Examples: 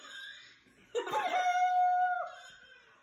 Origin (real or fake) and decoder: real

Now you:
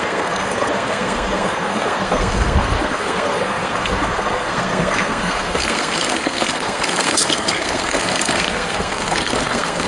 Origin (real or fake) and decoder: fake, codec, SNAC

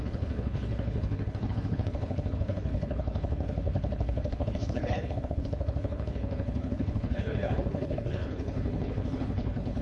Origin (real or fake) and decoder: fake, codec, HILCodec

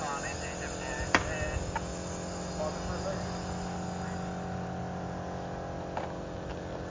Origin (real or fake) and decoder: real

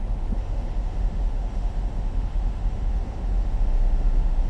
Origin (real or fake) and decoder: fake, autoencoder, DAC-VAE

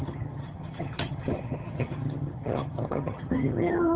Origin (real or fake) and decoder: fake, vocoder, HiFi-GAN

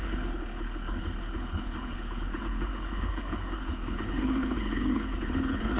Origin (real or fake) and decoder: fake, codec, HILCodec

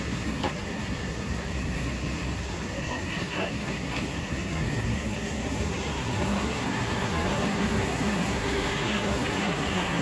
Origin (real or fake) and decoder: fake, codec, SNAC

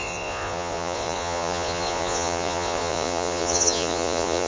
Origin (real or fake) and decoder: fake, vocoder, Vocos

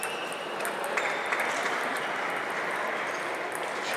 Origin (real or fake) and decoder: real